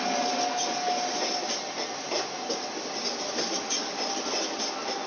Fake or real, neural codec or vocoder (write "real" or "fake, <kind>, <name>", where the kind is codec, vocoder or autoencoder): real